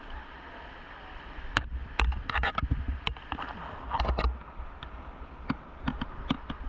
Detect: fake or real real